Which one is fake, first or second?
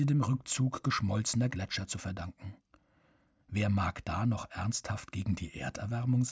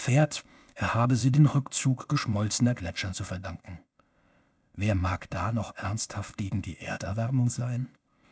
second